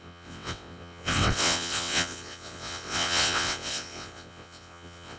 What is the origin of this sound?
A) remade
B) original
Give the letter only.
A